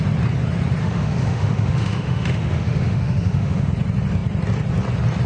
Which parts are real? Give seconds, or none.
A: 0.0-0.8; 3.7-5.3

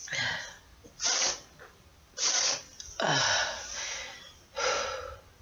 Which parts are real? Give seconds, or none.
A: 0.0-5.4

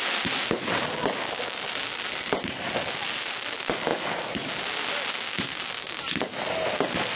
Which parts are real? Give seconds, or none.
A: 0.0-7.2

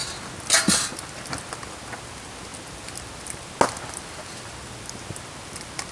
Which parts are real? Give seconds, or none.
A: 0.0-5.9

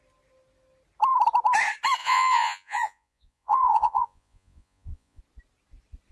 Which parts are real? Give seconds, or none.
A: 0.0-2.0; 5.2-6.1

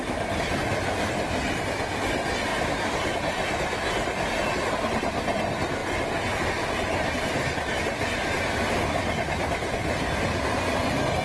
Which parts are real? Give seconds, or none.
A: 0.0-11.2